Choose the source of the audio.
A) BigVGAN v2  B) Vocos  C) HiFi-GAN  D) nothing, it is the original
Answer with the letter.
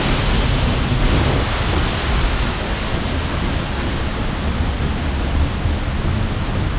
D